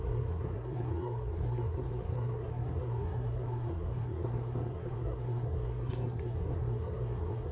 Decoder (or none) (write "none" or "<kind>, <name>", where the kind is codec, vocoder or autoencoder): codec, SNAC